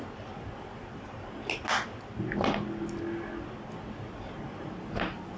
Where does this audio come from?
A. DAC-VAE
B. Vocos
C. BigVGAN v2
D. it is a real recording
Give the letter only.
D